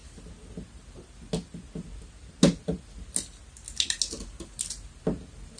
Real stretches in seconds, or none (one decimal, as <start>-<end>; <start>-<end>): 0.0-5.6